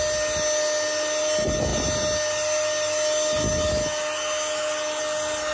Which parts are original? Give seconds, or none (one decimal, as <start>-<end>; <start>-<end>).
0.0-5.5